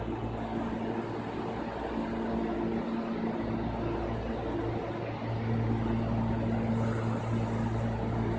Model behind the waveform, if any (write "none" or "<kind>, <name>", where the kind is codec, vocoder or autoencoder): none